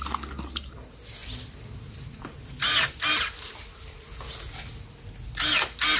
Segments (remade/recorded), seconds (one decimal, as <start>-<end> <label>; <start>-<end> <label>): 0.0-6.0 recorded